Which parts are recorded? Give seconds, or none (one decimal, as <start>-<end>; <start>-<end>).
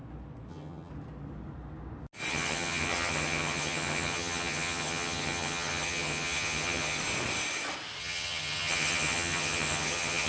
0.0-0.5; 0.9-2.3; 7.0-8.0